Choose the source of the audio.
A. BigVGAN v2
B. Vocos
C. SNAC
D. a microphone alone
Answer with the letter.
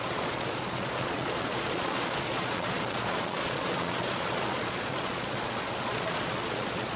B